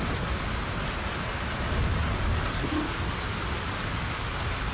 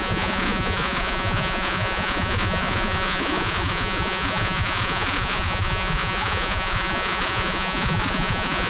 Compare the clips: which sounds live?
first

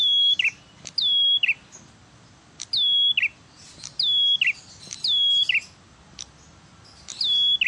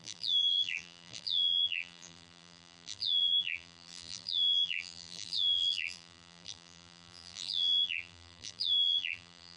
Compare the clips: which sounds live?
first